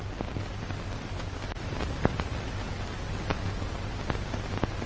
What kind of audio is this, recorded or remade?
recorded